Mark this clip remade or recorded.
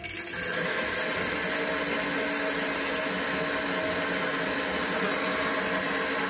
recorded